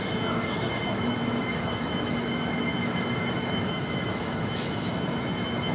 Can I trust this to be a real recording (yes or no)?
no